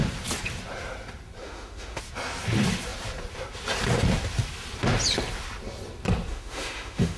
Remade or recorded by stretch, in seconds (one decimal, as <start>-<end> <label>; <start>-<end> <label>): 0.0-1.4 recorded; 1.4-2.0 remade; 2.0-6.3 recorded; 6.3-7.2 remade